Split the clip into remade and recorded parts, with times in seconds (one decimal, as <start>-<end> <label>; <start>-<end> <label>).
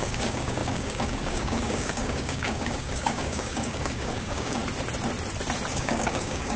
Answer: 0.0-4.6 remade; 4.6-5.7 recorded; 5.7-6.6 remade